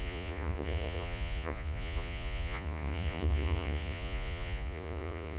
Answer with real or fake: fake